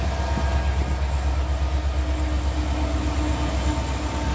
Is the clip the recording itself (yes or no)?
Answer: yes